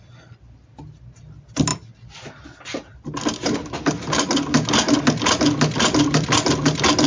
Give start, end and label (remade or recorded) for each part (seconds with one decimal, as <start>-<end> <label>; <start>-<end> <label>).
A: 0.0-7.1 recorded